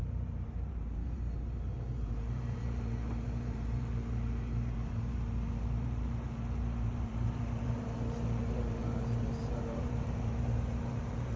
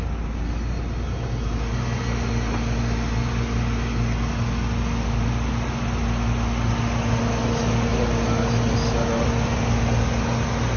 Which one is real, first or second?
second